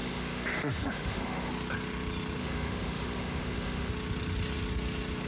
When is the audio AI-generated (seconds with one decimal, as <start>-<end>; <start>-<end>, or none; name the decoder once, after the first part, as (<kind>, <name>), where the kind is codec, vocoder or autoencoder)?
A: 0.0-1.5 (autoencoder, DAC-VAE); 2.4-3.9